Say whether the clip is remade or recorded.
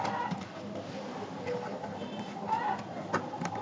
recorded